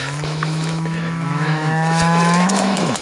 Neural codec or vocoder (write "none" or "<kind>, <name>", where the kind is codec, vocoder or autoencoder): autoencoder, DAC-VAE